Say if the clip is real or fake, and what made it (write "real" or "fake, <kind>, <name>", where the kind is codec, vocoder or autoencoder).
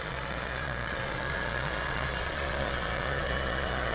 fake, vocoder, Vocos